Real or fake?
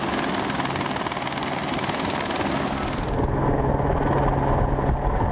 real